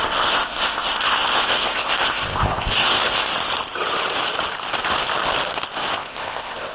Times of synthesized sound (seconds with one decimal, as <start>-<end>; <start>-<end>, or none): 0.0-3.3; 5.9-6.7